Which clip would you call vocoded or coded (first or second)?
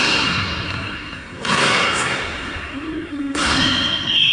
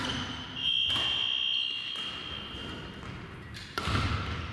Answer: first